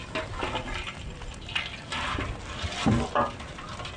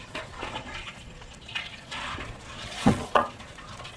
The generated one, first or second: second